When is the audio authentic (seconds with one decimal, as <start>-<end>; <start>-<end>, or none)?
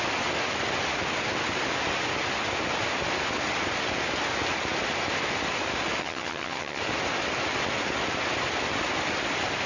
0.0-6.0; 6.8-9.7